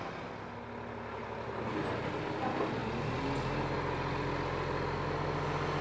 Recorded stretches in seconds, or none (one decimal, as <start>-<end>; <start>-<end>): 0.0-5.8